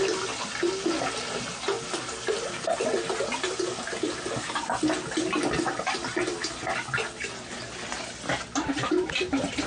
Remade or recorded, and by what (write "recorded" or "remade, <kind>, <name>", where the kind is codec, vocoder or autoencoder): recorded